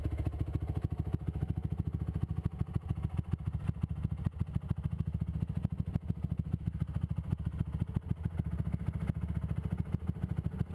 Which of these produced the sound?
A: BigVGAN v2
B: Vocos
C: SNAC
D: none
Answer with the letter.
D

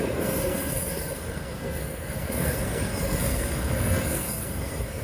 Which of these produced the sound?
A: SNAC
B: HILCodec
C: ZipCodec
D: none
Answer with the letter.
A